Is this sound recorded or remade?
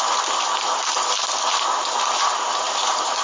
remade